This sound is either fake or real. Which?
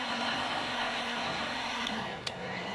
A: fake